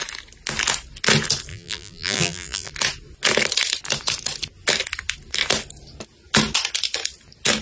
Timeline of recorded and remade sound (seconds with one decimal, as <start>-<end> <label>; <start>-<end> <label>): 0.0-1.5 recorded; 1.5-2.7 remade; 2.7-7.6 recorded

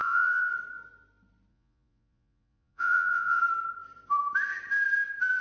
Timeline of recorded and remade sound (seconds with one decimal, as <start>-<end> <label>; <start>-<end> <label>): 0.0-0.5 remade; 0.5-1.5 recorded; 1.5-3.4 remade; 3.4-5.4 recorded

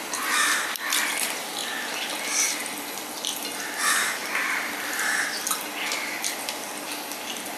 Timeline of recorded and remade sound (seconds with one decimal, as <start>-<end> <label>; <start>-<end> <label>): 0.0-1.6 recorded; 1.6-2.1 remade; 2.1-4.2 recorded; 4.2-5.8 remade; 5.8-7.6 recorded

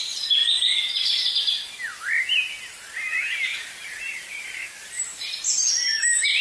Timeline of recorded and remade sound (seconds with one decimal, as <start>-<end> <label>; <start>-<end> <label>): 0.0-1.9 recorded; 1.9-2.9 remade; 2.9-3.5 recorded; 3.5-5.3 remade; 5.3-6.4 recorded

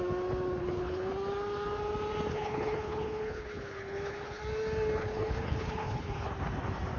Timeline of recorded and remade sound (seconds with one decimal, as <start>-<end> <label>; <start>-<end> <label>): 0.0-0.6 recorded; 0.6-1.1 remade; 1.1-2.3 recorded; 2.3-4.4 remade; 4.4-5.0 recorded; 5.0-6.3 remade; 6.3-7.0 recorded

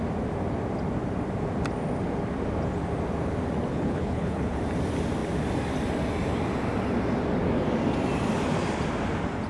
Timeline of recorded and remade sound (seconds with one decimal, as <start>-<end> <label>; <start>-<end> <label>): 0.0-3.7 recorded; 3.7-4.6 remade; 4.6-9.5 recorded

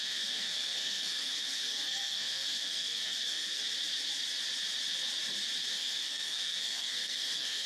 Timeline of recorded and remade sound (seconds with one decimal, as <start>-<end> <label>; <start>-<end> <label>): 0.0-3.6 remade; 3.6-5.7 recorded; 5.7-7.7 remade